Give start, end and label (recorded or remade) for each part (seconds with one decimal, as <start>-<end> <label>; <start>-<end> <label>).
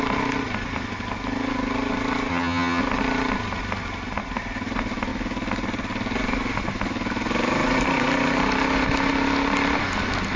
0.0-2.3 recorded; 2.3-2.8 remade; 2.8-10.4 recorded